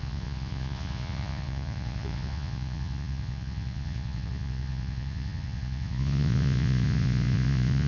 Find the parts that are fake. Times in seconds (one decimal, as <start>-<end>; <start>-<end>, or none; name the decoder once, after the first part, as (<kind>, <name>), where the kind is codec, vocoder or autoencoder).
0.0-7.9 (vocoder, Vocos)